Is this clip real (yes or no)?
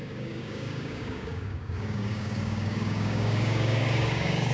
no